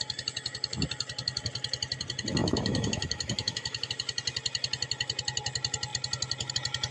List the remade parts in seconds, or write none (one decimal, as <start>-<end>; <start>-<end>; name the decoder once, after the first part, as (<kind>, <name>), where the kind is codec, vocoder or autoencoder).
2.4-3.9 (autoencoder, DAC-VAE)

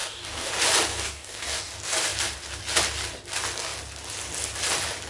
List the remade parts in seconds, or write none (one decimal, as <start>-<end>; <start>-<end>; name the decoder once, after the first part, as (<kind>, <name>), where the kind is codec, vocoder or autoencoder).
0.0-0.5 (codec, DAC); 0.9-1.7

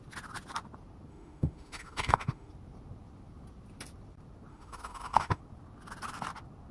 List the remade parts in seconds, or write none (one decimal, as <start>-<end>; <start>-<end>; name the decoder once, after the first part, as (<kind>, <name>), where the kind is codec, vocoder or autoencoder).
1.1-2.5 (autoencoder, DAC-VAE); 4.5-5.4

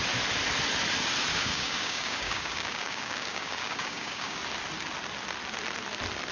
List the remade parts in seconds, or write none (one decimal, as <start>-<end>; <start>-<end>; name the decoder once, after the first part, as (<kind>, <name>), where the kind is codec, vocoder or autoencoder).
1.3-4.4 (codec, DAC)

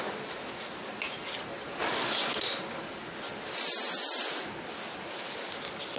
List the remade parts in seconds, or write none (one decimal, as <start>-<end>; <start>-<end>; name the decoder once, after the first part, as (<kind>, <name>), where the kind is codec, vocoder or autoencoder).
none